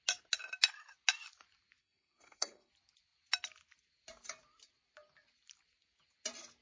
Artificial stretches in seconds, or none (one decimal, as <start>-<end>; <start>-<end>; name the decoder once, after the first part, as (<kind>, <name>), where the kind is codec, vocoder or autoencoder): 1.8-2.7 (codec, SNAC)